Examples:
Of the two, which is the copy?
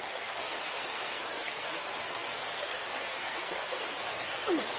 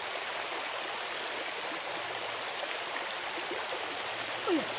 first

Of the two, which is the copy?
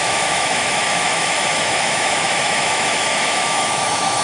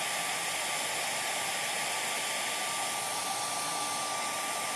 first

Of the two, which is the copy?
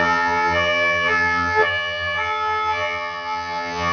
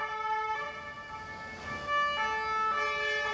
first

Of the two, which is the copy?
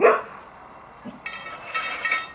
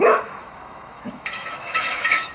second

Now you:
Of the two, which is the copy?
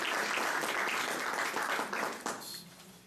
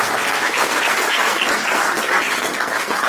second